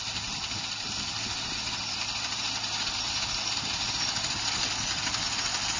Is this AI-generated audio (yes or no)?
no